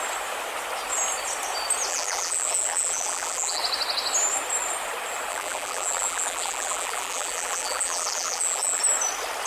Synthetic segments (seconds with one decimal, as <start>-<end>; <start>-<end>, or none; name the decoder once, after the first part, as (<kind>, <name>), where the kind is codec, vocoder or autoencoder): 1.9-3.6 (vocoder, BigVGAN v2); 5.3-8.8